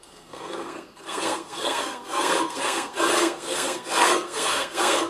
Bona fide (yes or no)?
no